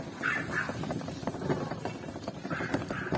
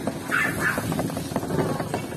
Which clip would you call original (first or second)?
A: second